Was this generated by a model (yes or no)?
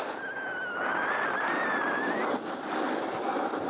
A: no